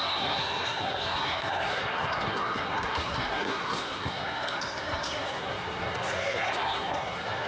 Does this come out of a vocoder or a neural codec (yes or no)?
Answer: yes